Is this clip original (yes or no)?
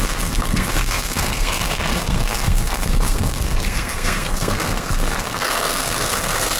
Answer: no